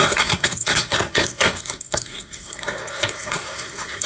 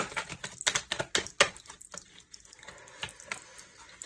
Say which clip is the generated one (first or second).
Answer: first